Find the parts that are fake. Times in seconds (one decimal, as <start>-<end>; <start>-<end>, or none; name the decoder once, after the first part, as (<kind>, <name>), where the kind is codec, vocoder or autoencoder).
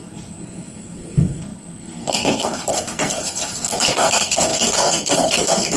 0.0-5.8 (codec, SNAC)